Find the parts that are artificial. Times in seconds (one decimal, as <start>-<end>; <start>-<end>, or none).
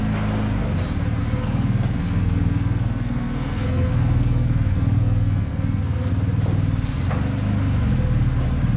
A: 1.2-6.1